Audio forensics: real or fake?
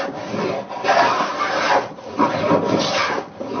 real